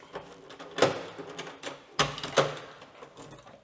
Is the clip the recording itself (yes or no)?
yes